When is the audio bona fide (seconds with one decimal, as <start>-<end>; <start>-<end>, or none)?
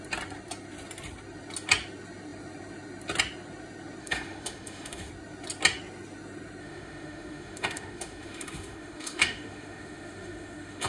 0.0-4.0; 5.1-6.6